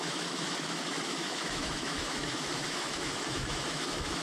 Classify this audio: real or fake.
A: fake